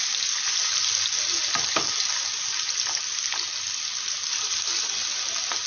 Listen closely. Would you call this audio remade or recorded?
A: recorded